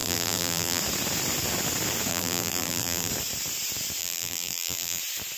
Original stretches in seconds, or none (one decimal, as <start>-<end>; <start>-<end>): 0.8-2.1; 3.1-4.0; 5.0-5.4